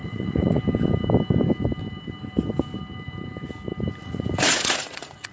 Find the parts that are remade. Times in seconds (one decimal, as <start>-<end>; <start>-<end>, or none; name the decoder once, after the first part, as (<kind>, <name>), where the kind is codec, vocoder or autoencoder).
0.0-0.6 (vocoder, Vocos); 4.0-5.3